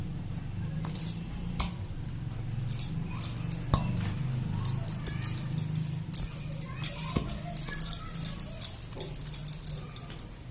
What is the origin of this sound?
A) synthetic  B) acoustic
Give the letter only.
B